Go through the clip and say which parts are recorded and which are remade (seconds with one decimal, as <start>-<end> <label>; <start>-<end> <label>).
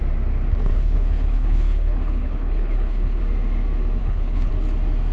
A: 0.0-0.7 recorded; 0.7-3.2 remade; 3.2-4.0 recorded; 4.0-4.5 remade; 4.5-5.1 recorded